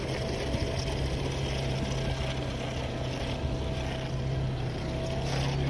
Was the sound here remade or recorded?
recorded